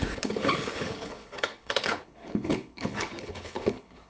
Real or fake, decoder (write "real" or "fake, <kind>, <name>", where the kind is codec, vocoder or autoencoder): fake, codec, HILCodec